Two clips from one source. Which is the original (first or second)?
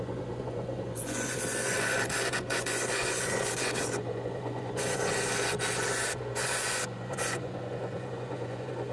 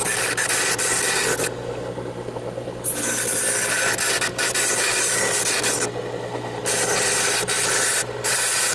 second